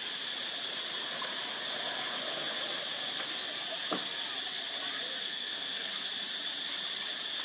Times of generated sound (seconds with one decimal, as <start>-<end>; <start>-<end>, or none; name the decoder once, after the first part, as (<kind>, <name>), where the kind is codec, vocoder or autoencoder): 5.2-6.1 (codec, SNAC)